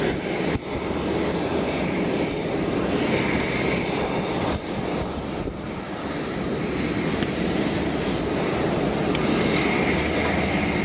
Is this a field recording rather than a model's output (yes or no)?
yes